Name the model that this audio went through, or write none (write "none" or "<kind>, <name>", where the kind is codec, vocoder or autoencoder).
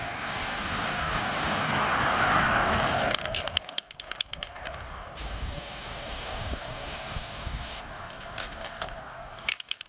codec, DAC